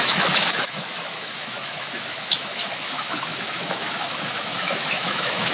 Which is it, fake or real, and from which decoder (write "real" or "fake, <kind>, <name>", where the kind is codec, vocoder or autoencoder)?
fake, autoencoder, DAC-VAE